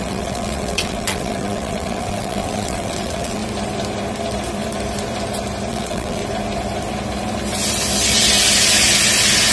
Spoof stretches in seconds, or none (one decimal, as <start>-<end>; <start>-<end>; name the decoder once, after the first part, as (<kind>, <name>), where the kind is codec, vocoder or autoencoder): 0.0-3.4 (vocoder, WaveNeXt); 5.7-6.2